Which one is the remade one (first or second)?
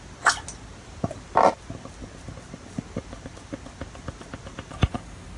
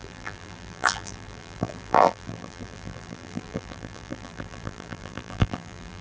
second